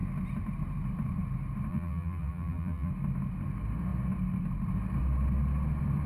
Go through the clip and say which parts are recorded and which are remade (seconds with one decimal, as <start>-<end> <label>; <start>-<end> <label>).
0.0-1.7 recorded; 1.7-2.9 remade; 2.9-6.1 recorded